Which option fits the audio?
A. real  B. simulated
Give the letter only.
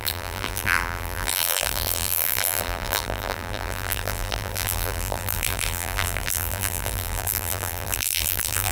B